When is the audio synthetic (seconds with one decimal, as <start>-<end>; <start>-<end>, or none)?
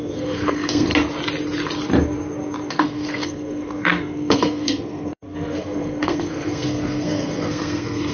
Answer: 0.0-0.9; 2.7-8.1